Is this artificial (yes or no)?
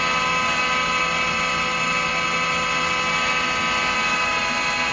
no